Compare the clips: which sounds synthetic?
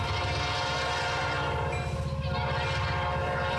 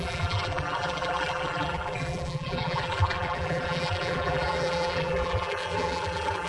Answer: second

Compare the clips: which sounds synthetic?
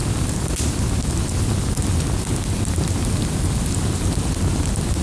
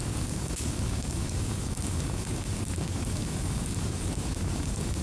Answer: second